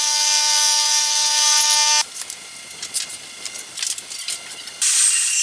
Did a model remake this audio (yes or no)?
no